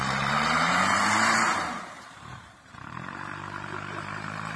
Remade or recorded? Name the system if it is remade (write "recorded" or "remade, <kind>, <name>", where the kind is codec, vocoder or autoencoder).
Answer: remade, vocoder, BigVGAN v2